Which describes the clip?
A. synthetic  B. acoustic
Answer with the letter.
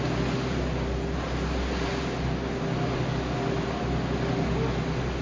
B